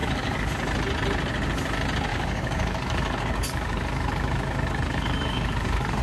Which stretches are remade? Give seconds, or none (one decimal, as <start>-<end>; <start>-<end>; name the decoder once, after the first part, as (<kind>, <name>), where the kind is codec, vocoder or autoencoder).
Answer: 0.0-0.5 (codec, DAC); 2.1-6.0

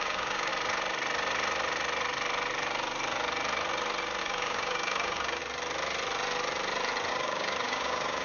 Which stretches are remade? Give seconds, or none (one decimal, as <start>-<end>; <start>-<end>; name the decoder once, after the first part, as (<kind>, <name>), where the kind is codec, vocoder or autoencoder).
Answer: 0.0-0.5 (codec, DAC); 4.2-5.4; 7.1-8.2

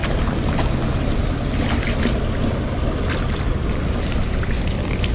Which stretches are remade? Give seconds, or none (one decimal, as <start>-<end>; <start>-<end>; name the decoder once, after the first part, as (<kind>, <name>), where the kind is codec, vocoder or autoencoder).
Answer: none